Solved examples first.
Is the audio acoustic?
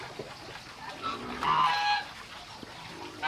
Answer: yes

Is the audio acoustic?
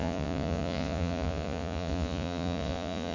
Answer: no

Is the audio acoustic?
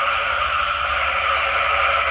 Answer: yes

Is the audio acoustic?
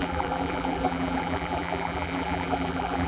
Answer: no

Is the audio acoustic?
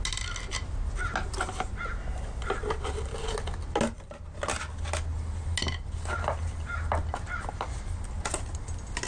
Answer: yes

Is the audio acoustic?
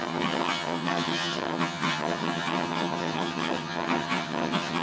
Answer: no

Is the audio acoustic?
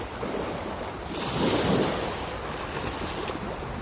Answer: yes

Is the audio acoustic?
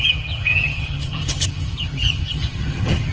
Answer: no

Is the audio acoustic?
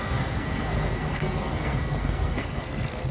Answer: no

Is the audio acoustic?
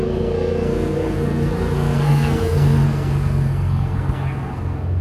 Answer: no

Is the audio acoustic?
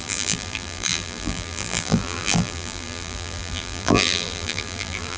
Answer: no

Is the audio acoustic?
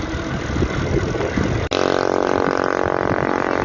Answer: yes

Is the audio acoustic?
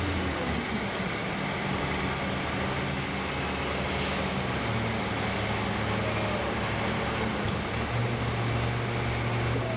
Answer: yes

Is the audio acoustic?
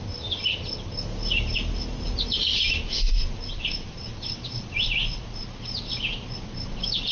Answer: yes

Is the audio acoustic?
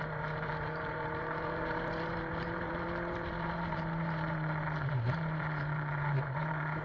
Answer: no